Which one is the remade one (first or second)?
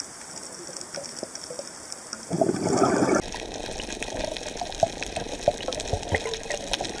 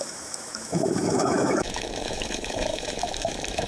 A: second